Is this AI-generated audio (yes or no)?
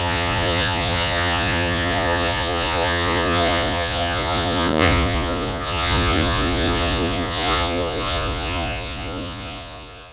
yes